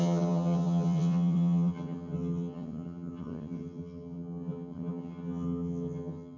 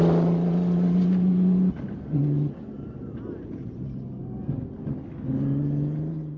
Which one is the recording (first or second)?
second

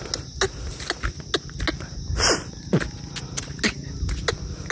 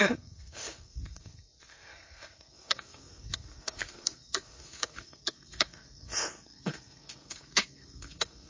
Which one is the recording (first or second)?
first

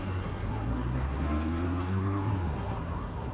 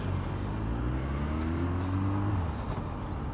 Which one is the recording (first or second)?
second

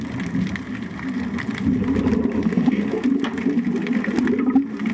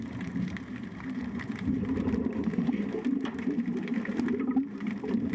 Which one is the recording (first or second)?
first